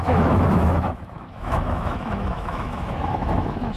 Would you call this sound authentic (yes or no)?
no